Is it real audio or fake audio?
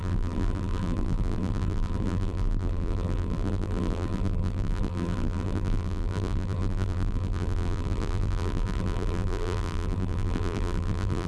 fake